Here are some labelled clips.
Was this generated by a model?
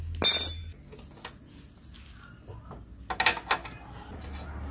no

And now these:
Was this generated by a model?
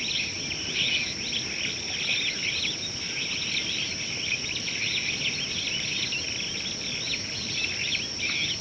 no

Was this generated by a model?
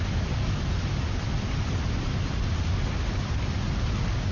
no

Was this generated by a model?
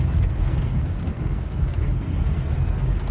yes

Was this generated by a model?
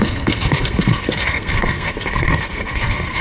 yes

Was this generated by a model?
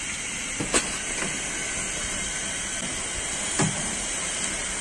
no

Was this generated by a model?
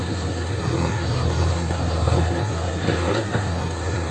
yes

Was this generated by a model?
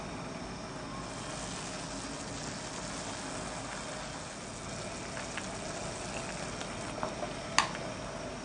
no